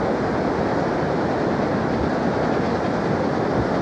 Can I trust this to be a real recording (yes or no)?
yes